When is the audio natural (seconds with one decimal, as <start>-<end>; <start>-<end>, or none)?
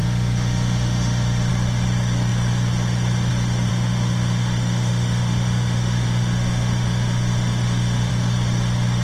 1.5-3.7; 8.1-9.0